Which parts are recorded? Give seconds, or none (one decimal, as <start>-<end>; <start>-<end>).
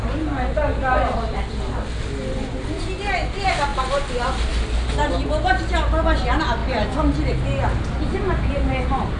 0.0-9.2